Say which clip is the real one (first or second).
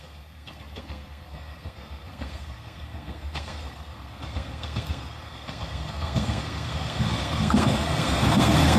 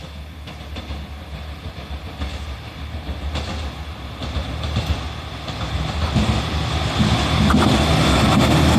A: second